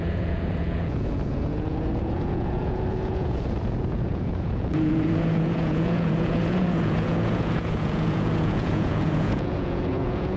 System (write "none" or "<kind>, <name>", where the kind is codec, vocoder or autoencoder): vocoder, Vocos